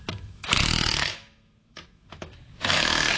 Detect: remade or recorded remade